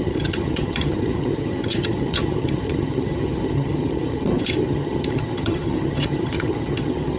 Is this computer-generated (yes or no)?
yes